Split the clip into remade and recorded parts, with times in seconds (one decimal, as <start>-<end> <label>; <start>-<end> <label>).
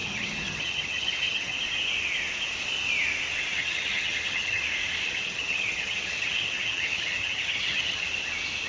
0.0-1.6 remade; 1.6-3.5 recorded; 3.5-4.6 remade; 4.6-5.0 recorded; 5.0-8.1 remade; 8.1-8.7 recorded